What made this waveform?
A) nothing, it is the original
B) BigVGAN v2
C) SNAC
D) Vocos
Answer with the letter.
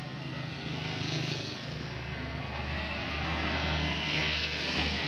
C